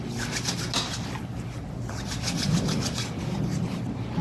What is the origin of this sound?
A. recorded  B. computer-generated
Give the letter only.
A